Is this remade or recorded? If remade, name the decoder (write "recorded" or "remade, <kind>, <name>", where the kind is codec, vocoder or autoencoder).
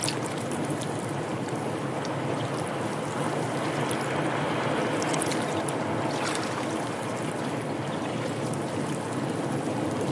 recorded